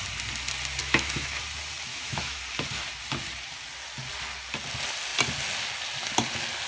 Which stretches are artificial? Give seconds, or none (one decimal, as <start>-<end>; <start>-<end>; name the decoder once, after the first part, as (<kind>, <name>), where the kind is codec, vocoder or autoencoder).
0.8-1.4 (autoencoder, DAC-VAE); 1.9-2.4